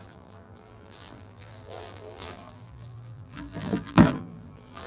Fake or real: fake